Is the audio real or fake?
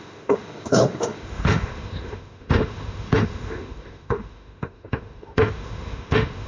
fake